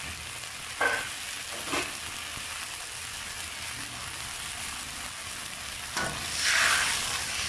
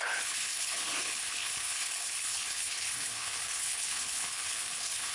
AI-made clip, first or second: second